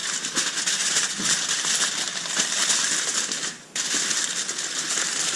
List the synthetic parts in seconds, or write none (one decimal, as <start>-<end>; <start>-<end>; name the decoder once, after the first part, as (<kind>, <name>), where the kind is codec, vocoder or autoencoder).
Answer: none